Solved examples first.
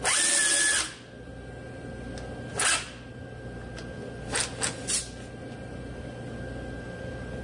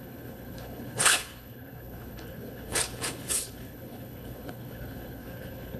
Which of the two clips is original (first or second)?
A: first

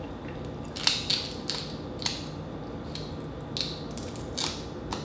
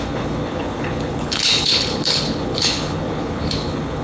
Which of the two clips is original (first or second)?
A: first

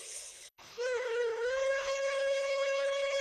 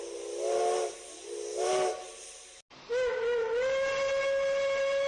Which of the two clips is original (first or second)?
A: second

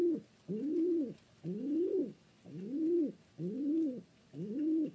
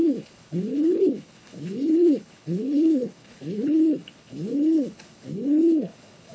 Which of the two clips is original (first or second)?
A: first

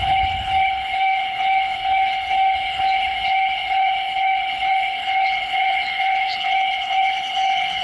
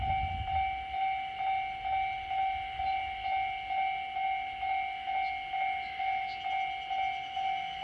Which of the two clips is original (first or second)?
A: second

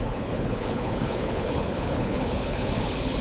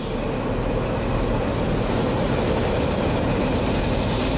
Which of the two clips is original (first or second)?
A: second